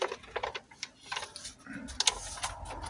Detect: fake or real real